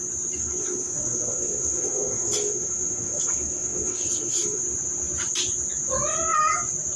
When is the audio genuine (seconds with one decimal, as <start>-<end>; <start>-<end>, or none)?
0.0-0.4; 4.6-7.0